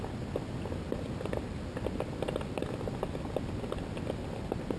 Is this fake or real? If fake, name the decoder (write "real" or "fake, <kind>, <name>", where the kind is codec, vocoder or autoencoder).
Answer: real